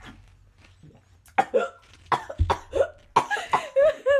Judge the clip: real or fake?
real